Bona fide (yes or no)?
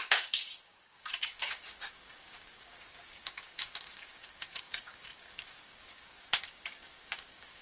no